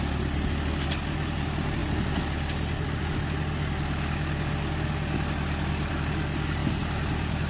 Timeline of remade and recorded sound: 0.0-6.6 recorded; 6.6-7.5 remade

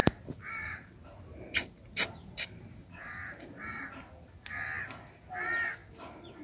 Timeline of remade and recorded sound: 0.0-3.8 remade; 3.8-6.4 recorded

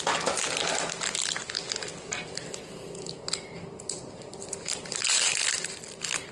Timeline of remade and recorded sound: 0.0-6.3 recorded

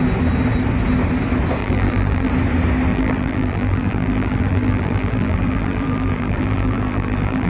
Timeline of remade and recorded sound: 0.0-1.6 recorded; 1.6-2.3 remade; 2.3-2.9 recorded; 2.9-7.5 remade